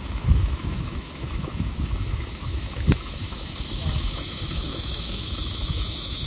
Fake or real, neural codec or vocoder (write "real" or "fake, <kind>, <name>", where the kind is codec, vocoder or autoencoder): fake, autoencoder, DAC-VAE